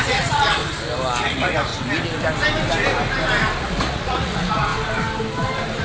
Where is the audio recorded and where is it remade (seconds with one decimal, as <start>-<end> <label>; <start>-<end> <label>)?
0.0-0.6 remade; 0.6-1.2 recorded; 1.2-1.7 remade; 1.7-3.6 recorded; 3.6-4.7 remade; 4.7-5.8 recorded